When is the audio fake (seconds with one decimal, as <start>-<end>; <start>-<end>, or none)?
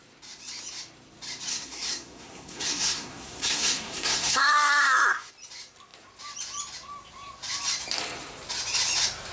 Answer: 1.5-5.3